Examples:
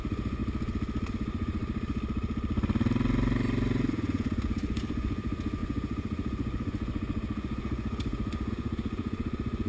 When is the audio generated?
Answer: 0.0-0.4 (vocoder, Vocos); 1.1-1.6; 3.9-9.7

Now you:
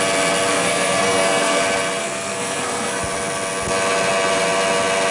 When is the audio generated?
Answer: 0.5-1.6 (codec, SNAC); 2.0-3.0

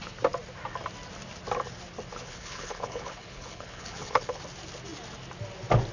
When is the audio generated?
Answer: 2.1-4.4 (codec, HILCodec)

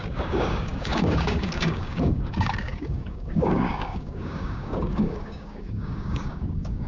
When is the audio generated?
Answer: 0.0-6.9 (codec, DAC)